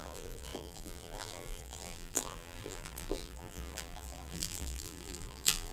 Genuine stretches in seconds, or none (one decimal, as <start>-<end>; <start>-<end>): none